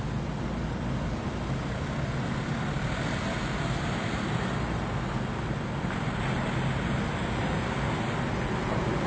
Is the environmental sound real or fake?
real